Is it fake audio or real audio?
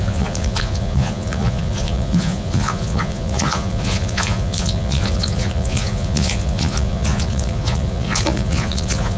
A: fake